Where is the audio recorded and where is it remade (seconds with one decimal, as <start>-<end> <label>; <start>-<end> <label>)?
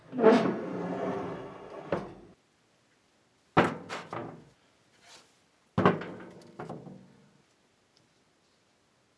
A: 0.0-9.2 recorded